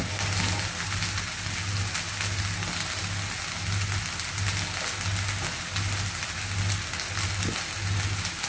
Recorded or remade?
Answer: recorded